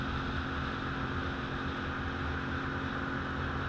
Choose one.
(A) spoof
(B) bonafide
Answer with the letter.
B